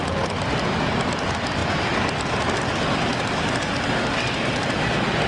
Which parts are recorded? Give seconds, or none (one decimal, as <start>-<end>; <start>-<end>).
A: 0.0-5.3